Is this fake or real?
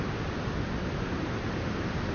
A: real